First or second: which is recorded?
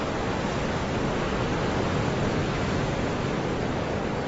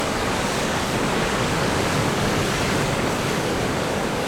first